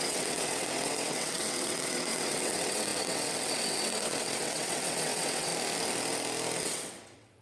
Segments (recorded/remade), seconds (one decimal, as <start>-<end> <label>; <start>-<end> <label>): 0.0-5.5 remade; 5.5-6.6 recorded; 6.6-7.4 remade